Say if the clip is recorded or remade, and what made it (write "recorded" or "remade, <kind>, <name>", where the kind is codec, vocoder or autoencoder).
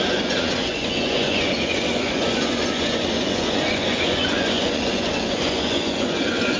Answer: remade, vocoder, Vocos